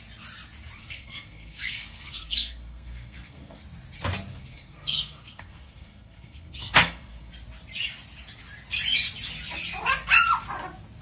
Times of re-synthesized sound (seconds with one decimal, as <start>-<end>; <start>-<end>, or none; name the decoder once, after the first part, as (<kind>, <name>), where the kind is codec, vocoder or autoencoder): 0.8-3.6 (codec, SNAC); 4.3-7.3